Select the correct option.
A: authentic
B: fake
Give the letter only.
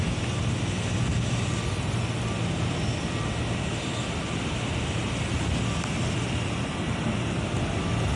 A